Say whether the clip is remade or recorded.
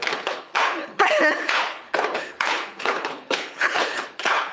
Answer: remade